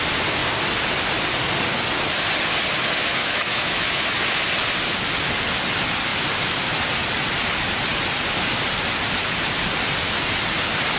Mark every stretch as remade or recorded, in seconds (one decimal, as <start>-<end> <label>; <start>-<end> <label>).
0.0-3.2 recorded; 3.2-4.1 remade; 4.1-11.0 recorded